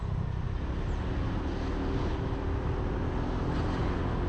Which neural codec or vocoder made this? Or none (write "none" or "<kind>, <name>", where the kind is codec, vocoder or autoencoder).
none